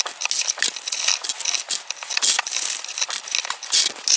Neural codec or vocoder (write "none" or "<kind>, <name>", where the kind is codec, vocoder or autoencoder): none